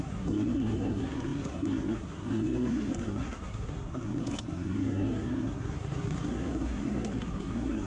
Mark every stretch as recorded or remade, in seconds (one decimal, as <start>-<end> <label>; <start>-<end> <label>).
0.0-7.9 remade